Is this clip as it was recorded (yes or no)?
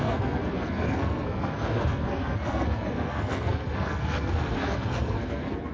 no